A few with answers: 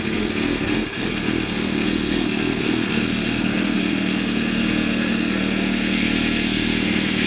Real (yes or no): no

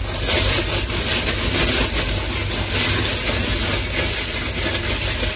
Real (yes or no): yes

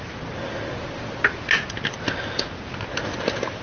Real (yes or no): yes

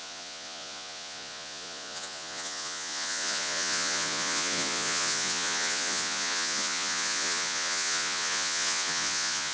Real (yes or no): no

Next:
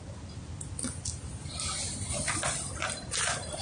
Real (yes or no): yes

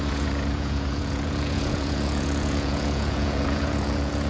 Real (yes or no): no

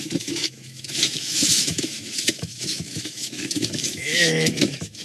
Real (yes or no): no